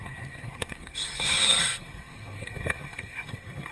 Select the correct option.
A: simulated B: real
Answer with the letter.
A